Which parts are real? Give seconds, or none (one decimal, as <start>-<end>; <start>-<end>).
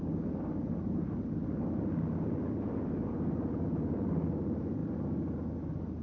0.0-6.0